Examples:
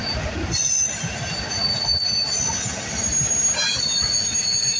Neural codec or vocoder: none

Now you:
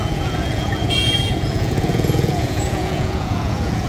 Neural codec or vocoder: vocoder, Vocos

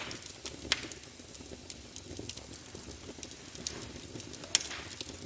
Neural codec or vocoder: none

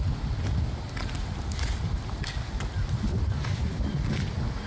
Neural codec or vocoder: none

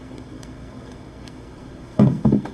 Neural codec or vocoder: codec, SNAC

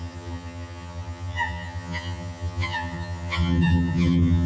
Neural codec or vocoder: vocoder, HiFi-GAN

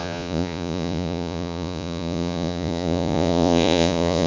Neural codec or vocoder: vocoder, Vocos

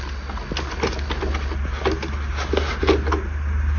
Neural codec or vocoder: none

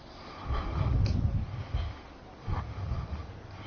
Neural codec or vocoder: none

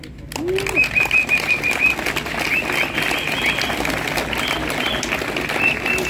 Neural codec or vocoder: none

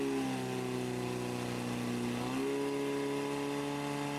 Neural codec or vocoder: none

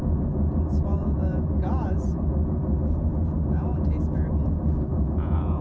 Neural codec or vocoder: vocoder, Vocos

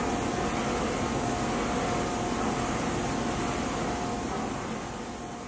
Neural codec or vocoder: none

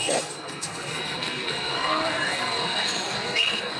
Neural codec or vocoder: codec, SNAC